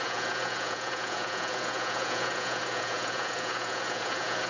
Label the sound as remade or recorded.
remade